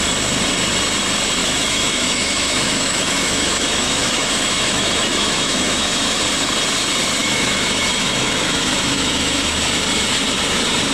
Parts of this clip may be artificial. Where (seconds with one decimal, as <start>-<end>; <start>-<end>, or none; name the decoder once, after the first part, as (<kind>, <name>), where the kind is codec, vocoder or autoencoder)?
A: 1.4-6.2 (autoencoder, DAC-VAE); 7.2-9.6